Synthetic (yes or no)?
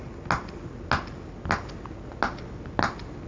no